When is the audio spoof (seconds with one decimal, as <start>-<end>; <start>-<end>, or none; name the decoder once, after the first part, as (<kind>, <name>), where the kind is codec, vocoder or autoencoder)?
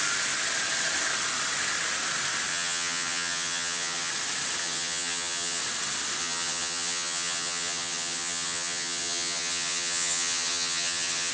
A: 2.5-4.1 (vocoder, HiFi-GAN); 4.6-5.6; 6.2-11.3